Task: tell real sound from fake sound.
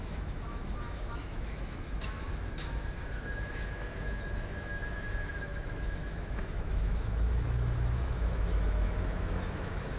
fake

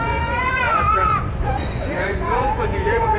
fake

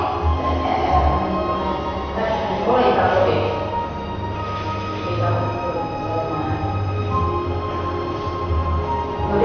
real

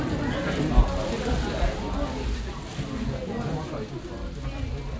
real